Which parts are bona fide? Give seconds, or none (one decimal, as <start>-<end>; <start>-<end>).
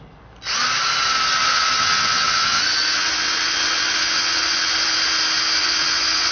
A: 0.0-1.4; 4.7-5.6